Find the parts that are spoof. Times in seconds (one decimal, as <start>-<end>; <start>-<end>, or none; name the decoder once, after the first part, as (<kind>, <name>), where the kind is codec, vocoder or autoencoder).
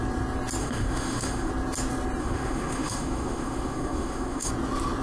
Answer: 0.6-1.5 (autoencoder, DAC-VAE); 2.2-4.5